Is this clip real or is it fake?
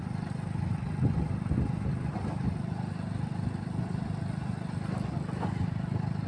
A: real